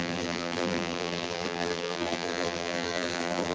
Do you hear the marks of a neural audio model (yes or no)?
yes